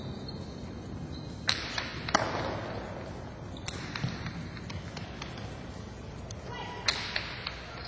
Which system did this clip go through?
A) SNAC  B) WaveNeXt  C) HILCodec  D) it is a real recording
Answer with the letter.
D